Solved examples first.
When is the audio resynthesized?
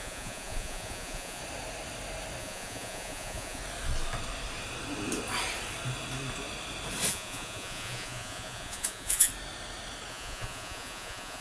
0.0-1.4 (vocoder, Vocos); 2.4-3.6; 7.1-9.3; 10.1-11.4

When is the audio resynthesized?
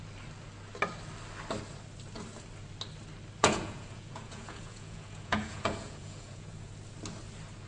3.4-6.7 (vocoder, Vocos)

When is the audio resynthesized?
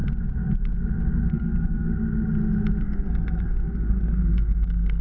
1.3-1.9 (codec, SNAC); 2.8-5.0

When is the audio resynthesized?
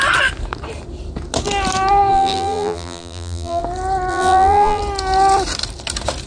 2.1-3.6 (vocoder, BigVGAN v2); 4.1-4.8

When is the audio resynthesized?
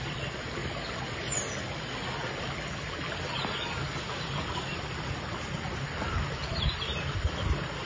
none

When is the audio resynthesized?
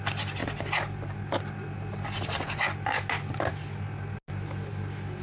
none